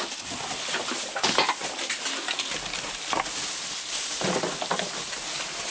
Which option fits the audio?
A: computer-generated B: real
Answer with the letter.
B